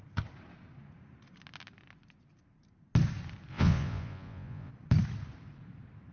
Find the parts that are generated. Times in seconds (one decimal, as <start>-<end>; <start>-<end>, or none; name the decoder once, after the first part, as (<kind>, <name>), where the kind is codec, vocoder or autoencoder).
3.5-4.7 (vocoder, Vocos)